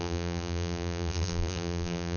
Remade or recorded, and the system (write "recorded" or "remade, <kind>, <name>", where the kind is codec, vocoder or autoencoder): remade, vocoder, BigVGAN v2